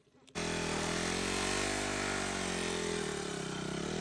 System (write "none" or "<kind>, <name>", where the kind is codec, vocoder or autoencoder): none